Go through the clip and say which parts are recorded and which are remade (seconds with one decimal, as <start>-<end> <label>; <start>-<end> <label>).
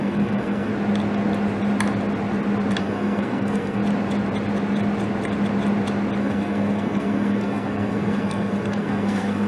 0.0-0.7 remade; 0.7-2.8 recorded; 2.8-3.8 remade; 3.8-6.2 recorded; 6.2-9.5 remade